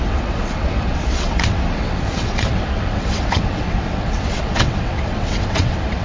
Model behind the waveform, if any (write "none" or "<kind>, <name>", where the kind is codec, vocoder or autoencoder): vocoder, WaveNeXt